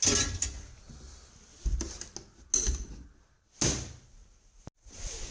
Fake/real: real